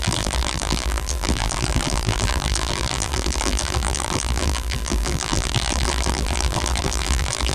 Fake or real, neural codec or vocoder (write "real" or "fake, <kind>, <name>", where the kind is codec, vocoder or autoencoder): fake, vocoder, BigVGAN v2